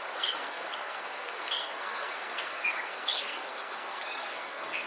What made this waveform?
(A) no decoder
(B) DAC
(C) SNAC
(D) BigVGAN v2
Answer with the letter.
C